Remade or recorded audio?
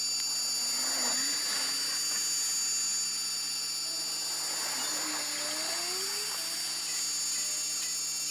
recorded